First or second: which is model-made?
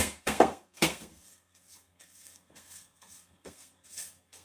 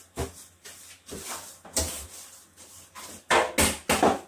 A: first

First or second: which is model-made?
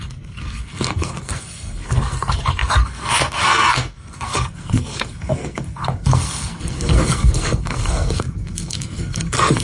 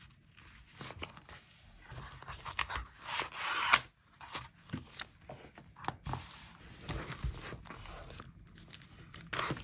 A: first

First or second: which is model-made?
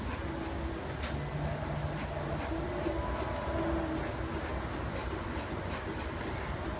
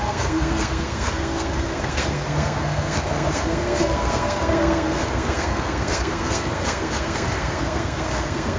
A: second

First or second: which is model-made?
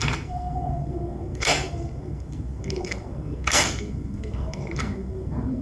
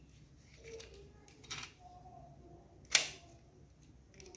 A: first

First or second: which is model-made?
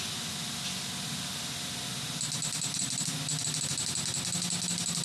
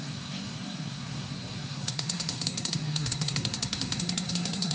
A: second